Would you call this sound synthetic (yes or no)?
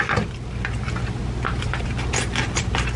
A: no